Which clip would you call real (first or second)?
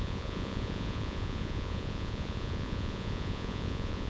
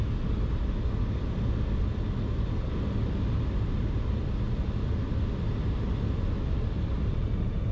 second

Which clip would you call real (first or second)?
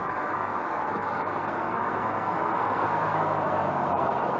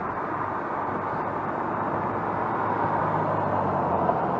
second